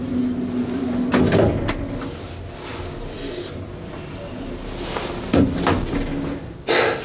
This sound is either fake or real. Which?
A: real